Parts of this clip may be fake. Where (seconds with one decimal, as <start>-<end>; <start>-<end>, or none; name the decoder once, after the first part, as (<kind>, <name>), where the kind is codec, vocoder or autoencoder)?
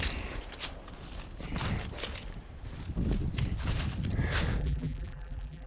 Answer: 4.6-5.7 (vocoder, BigVGAN v2)